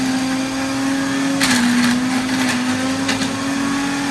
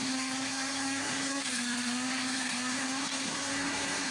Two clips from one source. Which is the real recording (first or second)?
first